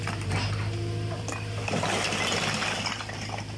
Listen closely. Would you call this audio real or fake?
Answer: real